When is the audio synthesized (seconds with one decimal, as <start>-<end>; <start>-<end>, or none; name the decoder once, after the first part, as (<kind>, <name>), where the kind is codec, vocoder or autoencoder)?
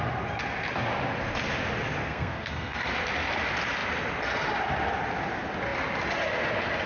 2.0-2.9 (codec, SNAC)